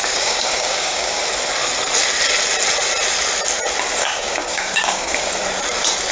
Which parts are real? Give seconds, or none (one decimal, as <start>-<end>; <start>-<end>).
1.2-4.0; 5.3-6.1